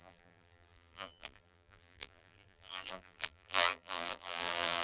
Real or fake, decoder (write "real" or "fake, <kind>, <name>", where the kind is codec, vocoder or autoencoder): fake, vocoder, BigVGAN v2